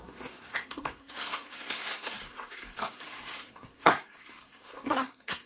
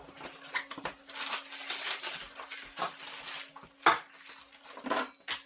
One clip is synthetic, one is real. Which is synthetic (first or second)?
first